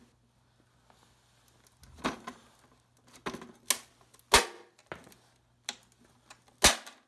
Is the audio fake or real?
real